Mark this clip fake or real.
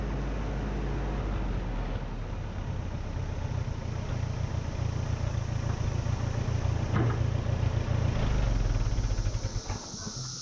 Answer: real